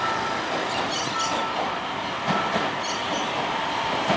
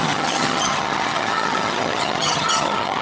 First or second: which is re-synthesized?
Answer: second